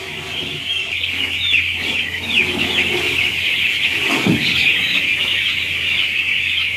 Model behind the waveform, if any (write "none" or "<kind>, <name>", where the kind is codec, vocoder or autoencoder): codec, DAC